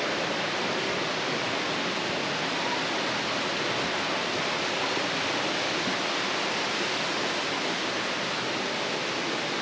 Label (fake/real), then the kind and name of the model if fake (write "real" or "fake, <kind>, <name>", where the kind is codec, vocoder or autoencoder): real